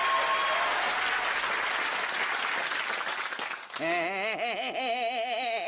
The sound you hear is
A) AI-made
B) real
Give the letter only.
B